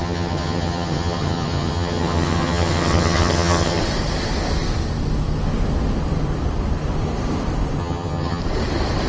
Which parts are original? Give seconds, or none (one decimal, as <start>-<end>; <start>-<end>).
3.8-7.8; 8.4-9.1

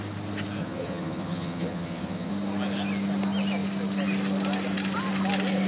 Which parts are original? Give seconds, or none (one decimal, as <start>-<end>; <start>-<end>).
0.0-0.6; 2.3-5.7

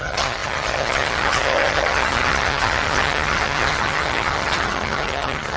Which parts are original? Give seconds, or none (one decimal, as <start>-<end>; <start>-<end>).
none

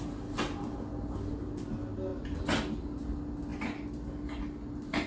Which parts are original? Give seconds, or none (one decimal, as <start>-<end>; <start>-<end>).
0.0-5.1